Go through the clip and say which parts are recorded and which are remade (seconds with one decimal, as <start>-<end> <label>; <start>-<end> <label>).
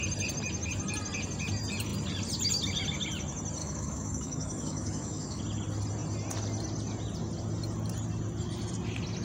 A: 0.0-3.6 recorded; 3.6-5.4 remade; 5.4-9.2 recorded